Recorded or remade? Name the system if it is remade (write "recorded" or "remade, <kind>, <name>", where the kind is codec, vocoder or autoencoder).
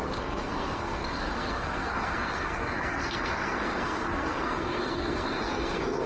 remade, codec, SNAC